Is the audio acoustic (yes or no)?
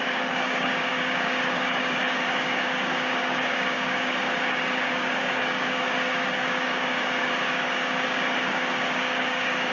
no